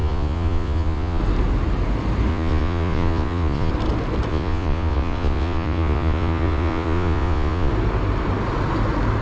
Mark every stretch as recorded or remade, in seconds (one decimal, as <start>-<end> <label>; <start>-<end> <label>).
0.0-1.2 remade; 1.2-2.3 recorded; 2.3-3.7 remade; 3.7-4.3 recorded; 4.3-7.7 remade; 7.7-9.2 recorded